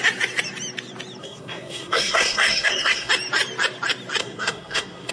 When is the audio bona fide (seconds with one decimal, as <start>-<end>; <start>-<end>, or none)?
0.0-1.2; 3.1-4.2